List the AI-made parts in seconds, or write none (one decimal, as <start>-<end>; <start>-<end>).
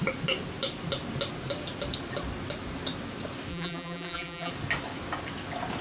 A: 3.5-4.5